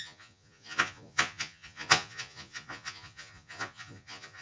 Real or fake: fake